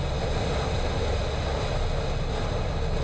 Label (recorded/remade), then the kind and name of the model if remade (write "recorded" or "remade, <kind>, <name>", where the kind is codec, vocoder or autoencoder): recorded